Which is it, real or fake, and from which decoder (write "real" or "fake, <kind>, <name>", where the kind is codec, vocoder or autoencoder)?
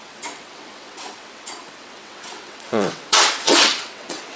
fake, vocoder, WaveNeXt